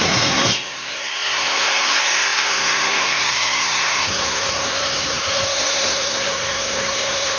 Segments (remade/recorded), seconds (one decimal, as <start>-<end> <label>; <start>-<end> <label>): 0.0-7.4 remade